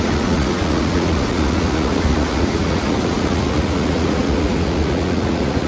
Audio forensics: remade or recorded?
remade